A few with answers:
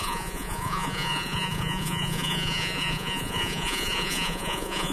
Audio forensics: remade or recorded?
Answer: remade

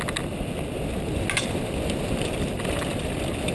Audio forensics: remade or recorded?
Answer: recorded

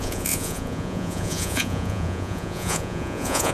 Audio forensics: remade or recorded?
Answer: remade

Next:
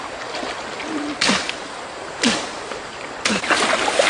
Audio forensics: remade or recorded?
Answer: recorded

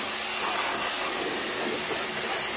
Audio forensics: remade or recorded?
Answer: recorded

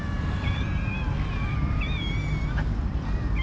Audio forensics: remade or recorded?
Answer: recorded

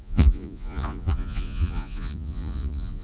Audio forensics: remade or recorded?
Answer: remade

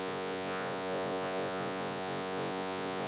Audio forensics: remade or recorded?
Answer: remade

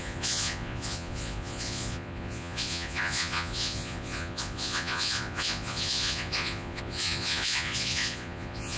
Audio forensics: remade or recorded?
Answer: remade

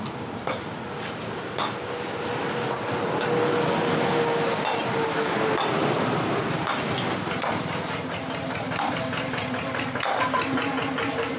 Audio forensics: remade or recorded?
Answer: recorded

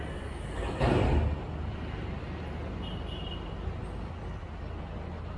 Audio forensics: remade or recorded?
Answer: recorded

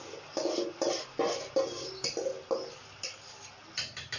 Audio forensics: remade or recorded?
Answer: recorded